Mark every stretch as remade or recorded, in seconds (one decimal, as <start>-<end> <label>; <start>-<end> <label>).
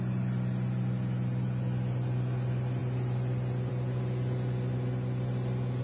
0.0-5.8 recorded